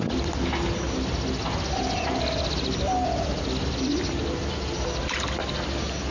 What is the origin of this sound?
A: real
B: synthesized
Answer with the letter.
A